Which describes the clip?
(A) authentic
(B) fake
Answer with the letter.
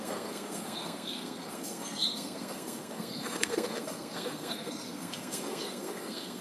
B